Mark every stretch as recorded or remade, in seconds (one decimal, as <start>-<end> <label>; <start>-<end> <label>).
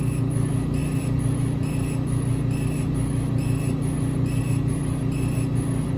0.0-6.0 recorded